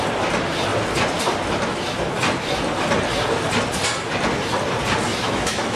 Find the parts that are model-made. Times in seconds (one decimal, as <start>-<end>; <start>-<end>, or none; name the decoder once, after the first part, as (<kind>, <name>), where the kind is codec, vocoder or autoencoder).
5.1-5.8 (autoencoder, DAC-VAE)